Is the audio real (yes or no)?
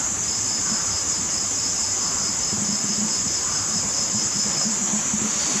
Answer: no